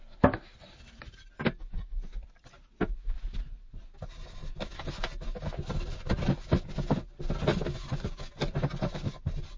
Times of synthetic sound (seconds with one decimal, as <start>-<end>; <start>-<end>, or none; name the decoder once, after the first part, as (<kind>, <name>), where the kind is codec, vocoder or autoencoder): none